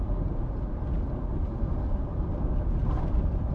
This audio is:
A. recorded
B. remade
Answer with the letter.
A